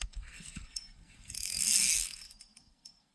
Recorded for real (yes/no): no